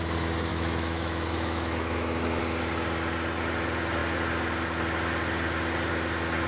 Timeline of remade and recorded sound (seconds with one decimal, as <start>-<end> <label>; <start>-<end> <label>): 0.0-0.5 recorded; 0.5-2.4 remade; 2.4-6.5 recorded